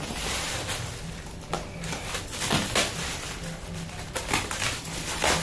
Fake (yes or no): no